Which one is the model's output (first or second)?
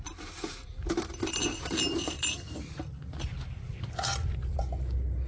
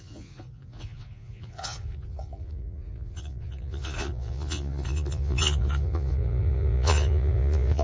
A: second